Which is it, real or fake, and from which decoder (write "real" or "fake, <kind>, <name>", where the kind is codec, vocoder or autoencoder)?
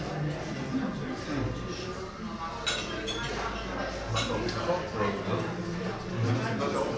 real